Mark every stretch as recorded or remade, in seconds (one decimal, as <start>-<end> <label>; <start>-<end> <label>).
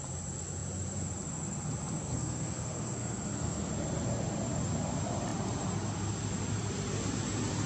0.0-2.0 recorded; 2.0-3.7 remade; 3.7-7.7 recorded